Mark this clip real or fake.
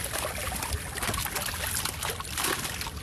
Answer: real